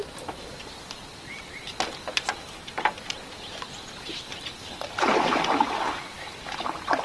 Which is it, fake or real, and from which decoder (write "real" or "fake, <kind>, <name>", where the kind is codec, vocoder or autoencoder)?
real